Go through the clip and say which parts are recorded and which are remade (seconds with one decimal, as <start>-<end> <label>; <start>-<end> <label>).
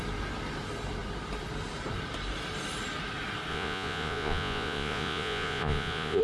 0.0-3.5 recorded; 3.5-6.2 remade